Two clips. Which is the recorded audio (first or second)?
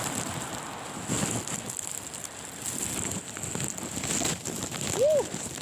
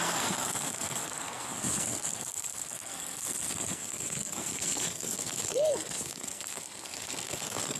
first